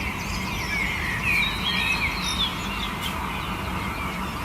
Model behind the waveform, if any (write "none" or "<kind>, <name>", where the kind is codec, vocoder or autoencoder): none